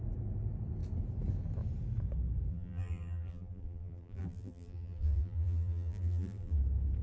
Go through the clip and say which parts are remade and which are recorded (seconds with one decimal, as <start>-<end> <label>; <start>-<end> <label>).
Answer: 0.0-2.5 recorded; 2.5-6.6 remade; 6.6-7.0 recorded